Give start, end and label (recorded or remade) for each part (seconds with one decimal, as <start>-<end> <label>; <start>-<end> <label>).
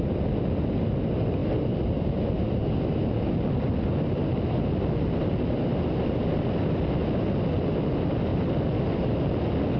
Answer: 0.0-1.4 recorded; 1.4-2.0 remade; 2.0-8.3 recorded; 8.3-9.8 remade